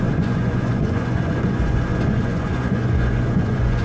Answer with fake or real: fake